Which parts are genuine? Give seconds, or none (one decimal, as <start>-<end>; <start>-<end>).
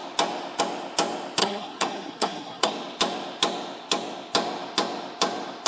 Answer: 0.0-1.4; 2.7-5.7